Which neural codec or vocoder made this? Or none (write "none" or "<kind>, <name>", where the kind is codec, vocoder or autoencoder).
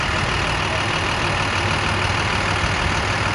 none